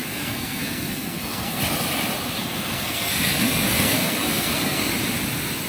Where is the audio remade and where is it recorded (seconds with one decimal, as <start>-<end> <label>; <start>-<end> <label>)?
0.0-1.6 remade; 1.6-2.4 recorded; 2.4-4.9 remade; 4.9-5.7 recorded